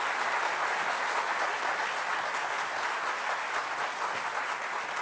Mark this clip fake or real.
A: real